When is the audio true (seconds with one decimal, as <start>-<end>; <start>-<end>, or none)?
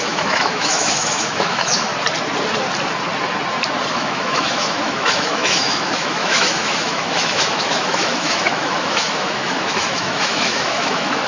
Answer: 1.9-3.9